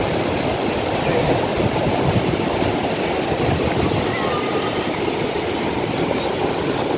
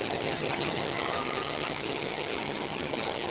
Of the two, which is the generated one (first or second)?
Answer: second